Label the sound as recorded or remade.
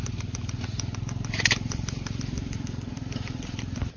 remade